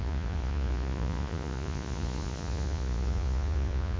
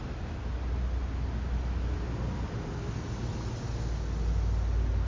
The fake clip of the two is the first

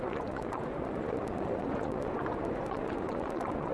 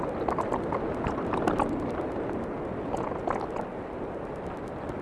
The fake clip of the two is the first